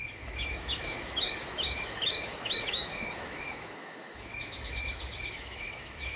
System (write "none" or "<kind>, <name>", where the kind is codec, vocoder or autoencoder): autoencoder, DAC-VAE